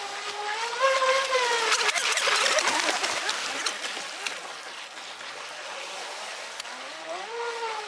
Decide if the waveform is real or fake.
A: real